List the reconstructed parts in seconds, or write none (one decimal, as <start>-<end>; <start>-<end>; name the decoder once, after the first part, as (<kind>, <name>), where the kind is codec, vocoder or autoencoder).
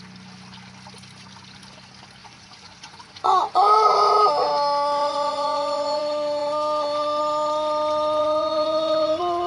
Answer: 2.2-4.1 (vocoder, Vocos); 5.0-6.0; 8.2-9.5